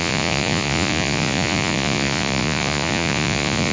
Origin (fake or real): fake